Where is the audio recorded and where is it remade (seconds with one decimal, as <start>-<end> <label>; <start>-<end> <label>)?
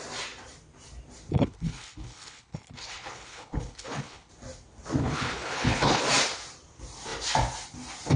0.0-1.3 recorded; 1.3-4.3 remade; 4.3-5.0 recorded; 5.0-6.0 remade; 6.0-8.2 recorded